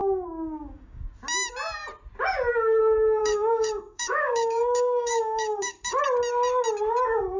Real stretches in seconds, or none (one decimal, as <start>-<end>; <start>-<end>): 1.0-3.2; 6.0-7.4